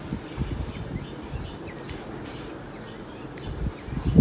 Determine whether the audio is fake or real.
real